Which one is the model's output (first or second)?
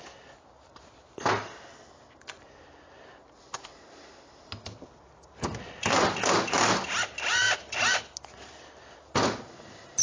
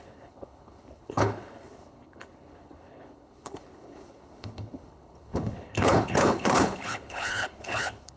second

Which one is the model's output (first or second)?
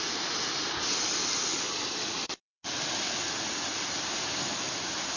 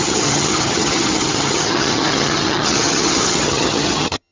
second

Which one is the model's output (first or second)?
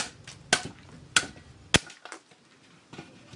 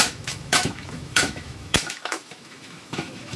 second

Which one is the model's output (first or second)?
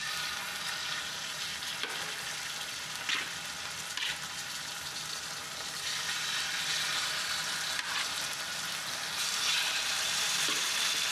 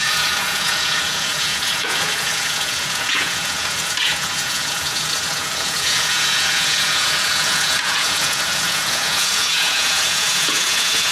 second